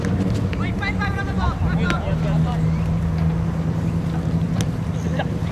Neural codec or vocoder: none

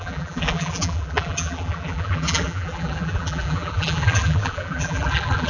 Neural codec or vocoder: vocoder, BigVGAN v2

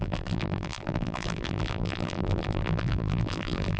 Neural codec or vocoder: vocoder, BigVGAN v2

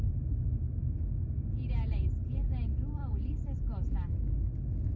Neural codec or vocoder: none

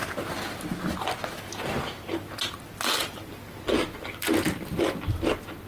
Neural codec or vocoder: none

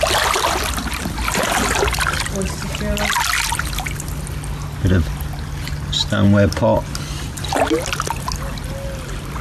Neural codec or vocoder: none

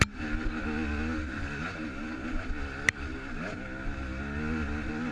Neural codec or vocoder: none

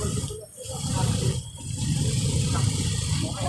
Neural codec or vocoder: none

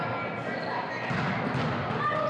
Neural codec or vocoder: none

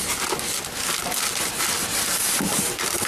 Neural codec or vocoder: none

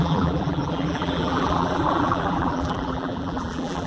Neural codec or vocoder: vocoder, BigVGAN v2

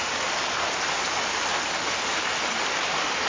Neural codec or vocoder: none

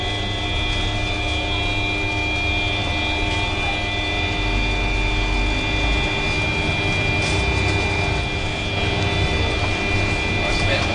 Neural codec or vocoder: none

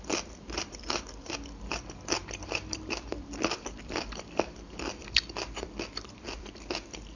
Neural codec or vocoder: vocoder, BigVGAN v2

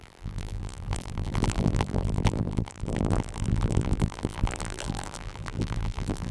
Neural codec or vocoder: vocoder, BigVGAN v2